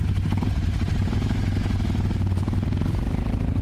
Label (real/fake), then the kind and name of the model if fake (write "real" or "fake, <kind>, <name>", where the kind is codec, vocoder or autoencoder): real